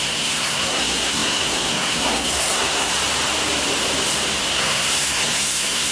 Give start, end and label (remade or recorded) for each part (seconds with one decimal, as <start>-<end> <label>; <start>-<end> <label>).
0.0-2.9 remade; 2.9-4.5 recorded; 4.5-5.9 remade